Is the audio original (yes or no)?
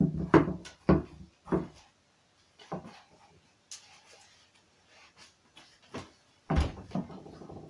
yes